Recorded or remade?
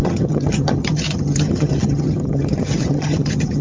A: remade